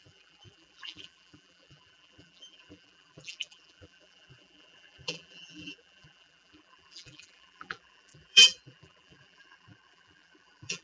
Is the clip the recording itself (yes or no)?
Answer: no